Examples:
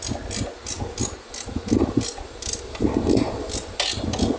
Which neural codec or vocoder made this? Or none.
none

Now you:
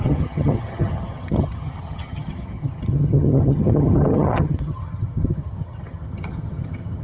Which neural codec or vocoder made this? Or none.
vocoder, HiFi-GAN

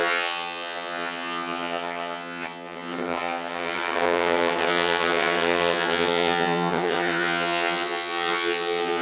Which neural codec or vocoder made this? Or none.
vocoder, HiFi-GAN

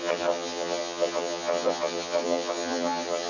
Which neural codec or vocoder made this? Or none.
vocoder, HiFi-GAN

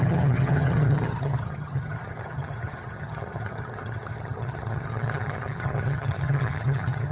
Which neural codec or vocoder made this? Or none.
vocoder, HiFi-GAN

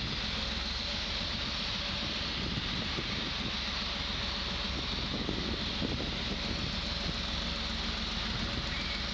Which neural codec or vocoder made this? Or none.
none